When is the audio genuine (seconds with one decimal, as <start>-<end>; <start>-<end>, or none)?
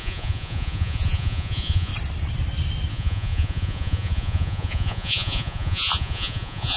1.9-2.9